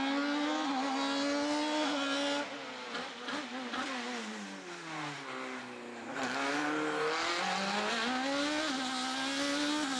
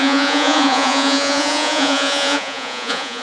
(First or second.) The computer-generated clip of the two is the second